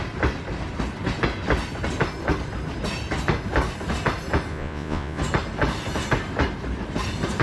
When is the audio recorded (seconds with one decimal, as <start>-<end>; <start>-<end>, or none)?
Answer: 0.0-4.5; 5.2-7.4